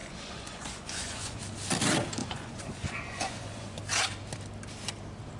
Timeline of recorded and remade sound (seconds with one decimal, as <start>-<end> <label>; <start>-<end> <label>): 0.0-1.4 remade; 1.4-2.2 recorded; 2.2-3.8 remade; 3.8-5.4 recorded

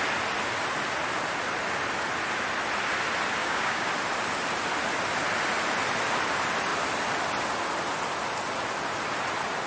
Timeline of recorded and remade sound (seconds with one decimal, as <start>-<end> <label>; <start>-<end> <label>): 0.0-3.4 recorded; 3.4-3.9 remade; 3.9-9.7 recorded